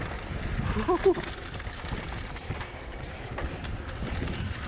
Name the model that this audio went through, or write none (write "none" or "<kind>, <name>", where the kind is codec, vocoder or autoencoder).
none